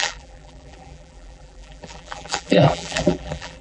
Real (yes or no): no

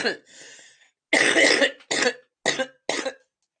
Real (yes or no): yes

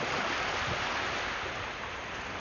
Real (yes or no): yes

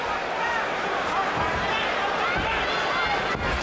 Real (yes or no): yes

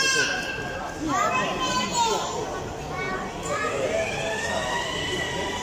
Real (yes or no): yes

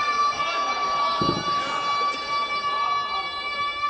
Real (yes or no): yes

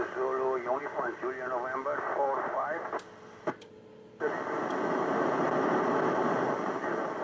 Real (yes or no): yes